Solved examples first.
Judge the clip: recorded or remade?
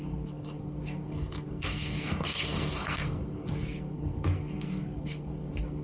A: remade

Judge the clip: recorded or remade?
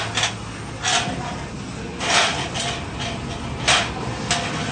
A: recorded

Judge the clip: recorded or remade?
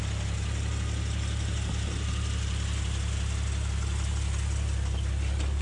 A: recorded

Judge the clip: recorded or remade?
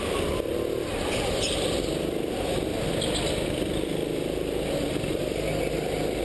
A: recorded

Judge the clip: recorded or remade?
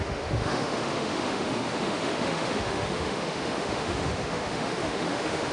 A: remade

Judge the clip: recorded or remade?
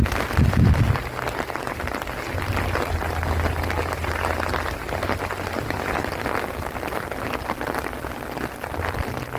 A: recorded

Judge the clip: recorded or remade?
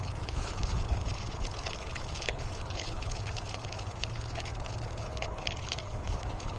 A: remade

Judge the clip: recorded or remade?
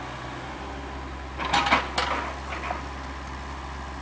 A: recorded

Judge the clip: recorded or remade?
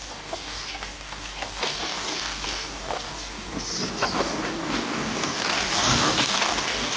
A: remade